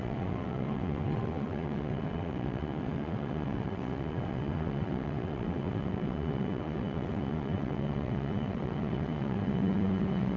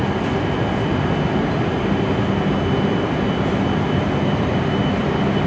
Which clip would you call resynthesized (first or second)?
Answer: first